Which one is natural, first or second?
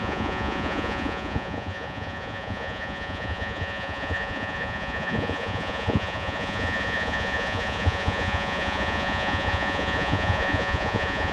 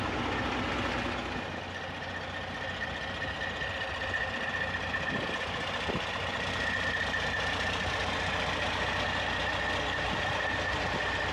second